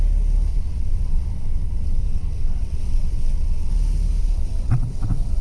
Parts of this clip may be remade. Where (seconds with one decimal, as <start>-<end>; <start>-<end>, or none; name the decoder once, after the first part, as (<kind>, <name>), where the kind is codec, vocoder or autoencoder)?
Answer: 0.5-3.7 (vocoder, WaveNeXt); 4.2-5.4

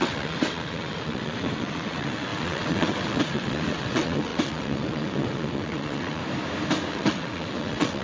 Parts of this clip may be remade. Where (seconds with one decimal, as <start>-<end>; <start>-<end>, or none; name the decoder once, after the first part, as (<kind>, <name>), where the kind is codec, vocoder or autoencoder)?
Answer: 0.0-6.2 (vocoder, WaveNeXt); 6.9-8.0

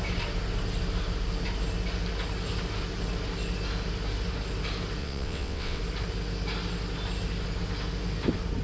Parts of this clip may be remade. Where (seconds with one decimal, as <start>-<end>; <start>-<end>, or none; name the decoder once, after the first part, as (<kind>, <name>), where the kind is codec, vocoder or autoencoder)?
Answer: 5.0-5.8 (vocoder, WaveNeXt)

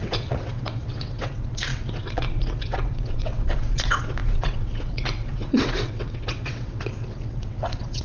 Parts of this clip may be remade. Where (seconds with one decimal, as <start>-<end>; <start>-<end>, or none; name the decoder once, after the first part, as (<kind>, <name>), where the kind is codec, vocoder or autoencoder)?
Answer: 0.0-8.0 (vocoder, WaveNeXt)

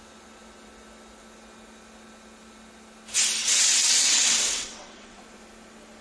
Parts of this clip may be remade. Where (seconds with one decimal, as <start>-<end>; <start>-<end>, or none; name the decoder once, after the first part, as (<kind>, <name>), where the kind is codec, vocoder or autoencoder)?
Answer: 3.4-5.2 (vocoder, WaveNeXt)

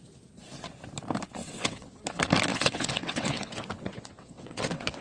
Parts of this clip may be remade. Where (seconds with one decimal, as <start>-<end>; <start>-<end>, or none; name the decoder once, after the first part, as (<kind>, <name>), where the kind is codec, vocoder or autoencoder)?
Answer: 1.4-2.0 (vocoder, WaveNeXt); 2.5-5.0

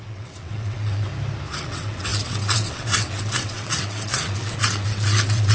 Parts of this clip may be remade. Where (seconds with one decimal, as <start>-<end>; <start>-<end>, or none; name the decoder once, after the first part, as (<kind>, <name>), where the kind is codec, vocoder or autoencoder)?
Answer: 0.0-1.1 (vocoder, WaveNeXt); 1.6-5.5